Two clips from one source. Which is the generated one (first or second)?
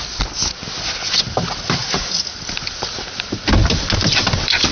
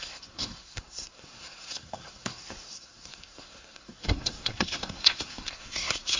second